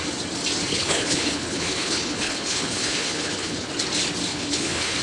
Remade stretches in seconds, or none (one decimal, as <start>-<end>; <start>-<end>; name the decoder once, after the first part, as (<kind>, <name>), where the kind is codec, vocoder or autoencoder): 0.7-3.7 (codec, HILCodec); 4.3-5.0